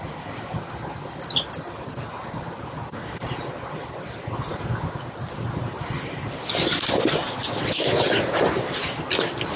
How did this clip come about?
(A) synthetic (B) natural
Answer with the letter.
B